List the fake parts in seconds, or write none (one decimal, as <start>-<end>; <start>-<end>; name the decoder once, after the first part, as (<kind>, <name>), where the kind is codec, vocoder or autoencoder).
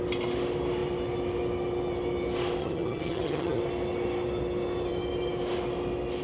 2.6-3.6 (vocoder, HiFi-GAN)